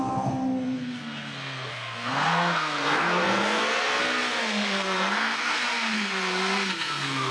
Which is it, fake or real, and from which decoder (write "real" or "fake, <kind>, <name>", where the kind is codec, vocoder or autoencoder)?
fake, codec, SNAC